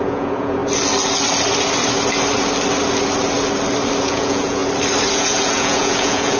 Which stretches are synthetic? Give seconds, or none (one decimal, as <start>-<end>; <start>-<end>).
0.0-0.6; 4.0-4.6; 5.1-6.4